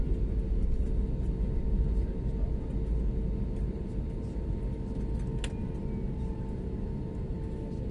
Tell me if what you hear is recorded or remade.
recorded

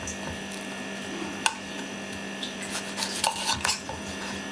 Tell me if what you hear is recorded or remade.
recorded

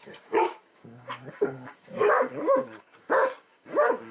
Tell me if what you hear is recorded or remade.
remade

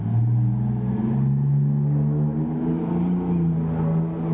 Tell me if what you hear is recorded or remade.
recorded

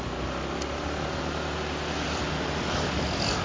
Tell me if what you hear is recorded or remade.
recorded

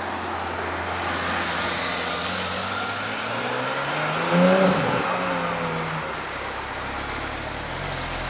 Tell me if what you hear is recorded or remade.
recorded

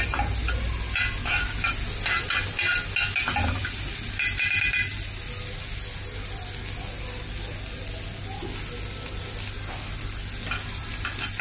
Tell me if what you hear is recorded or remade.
recorded